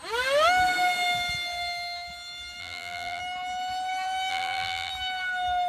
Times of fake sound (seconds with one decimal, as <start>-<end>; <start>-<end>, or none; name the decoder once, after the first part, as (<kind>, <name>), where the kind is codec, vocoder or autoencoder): 2.6-3.2 (vocoder, BigVGAN v2); 4.3-4.9